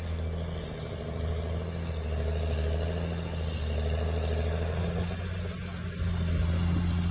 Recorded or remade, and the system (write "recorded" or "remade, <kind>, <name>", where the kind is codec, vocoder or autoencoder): recorded